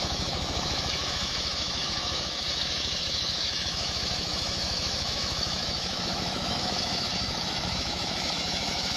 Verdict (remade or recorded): remade